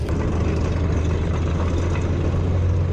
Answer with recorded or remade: recorded